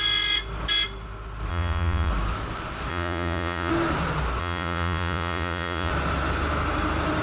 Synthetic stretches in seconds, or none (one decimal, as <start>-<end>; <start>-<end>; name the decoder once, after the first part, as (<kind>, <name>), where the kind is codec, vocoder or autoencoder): 1.5-2.1 (vocoder, Vocos); 2.9-3.7; 4.4-5.9